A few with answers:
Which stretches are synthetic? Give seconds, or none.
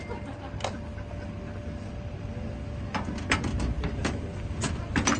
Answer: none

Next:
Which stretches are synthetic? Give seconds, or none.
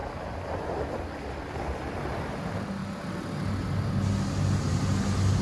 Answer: none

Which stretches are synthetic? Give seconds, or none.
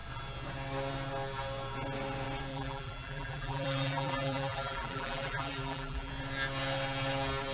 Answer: 2.5-6.1 (vocoder, BigVGAN v2)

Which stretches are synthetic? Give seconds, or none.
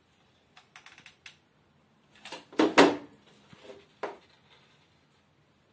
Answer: none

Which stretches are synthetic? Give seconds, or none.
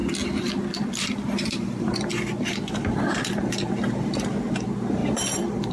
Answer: 0.0-3.4 (vocoder, BigVGAN v2); 5.0-5.7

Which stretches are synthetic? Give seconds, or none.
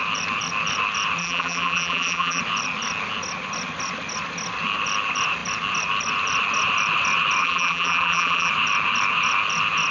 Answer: 1.2-2.4 (vocoder, BigVGAN v2); 7.4-8.5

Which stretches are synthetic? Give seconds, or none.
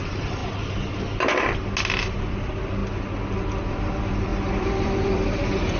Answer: 0.0-0.4 (vocoder, BigVGAN v2); 2.2-2.8; 3.7-5.8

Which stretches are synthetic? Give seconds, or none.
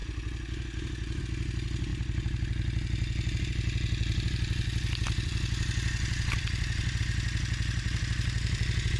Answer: 1.9-7.0 (vocoder, BigVGAN v2)